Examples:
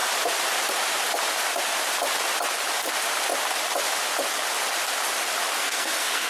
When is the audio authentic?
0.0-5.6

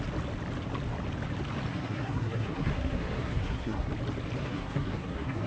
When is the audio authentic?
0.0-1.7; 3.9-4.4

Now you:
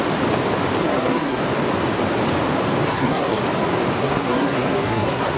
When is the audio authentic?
0.0-0.8; 1.4-2.9; 3.4-4.0